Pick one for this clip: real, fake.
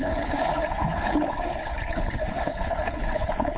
fake